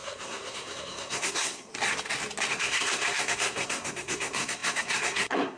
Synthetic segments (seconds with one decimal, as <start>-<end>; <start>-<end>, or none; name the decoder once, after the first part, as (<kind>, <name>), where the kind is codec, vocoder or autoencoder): 0.0-1.7 (codec, SNAC); 2.5-5.6